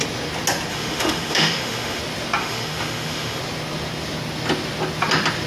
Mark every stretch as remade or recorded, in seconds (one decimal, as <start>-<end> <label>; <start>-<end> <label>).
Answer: 0.0-0.7 recorded; 0.7-2.0 remade; 2.0-2.4 recorded; 2.4-3.4 remade; 3.4-5.5 recorded